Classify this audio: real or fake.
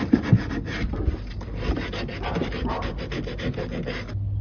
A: real